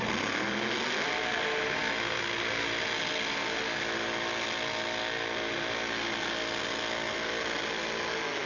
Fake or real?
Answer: real